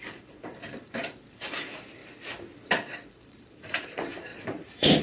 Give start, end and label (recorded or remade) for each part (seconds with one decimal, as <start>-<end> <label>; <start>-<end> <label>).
0.0-2.0 remade; 2.0-3.1 recorded; 3.1-5.0 remade